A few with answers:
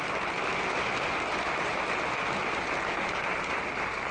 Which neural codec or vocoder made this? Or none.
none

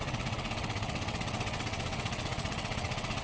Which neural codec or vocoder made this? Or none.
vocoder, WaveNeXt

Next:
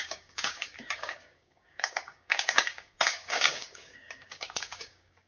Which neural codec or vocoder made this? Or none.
codec, DAC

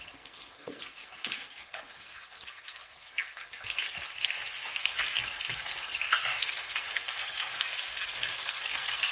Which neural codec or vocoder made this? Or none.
codec, SNAC